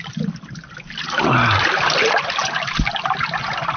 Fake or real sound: real